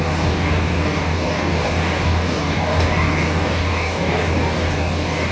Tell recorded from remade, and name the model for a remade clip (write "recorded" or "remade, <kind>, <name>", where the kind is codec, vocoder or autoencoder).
remade, codec, DAC